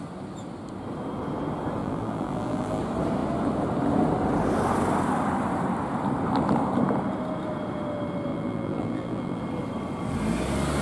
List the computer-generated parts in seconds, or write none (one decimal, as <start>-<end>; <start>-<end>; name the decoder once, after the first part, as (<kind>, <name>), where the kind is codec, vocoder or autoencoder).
1.8-2.8 (vocoder, BigVGAN v2); 8.3-9.4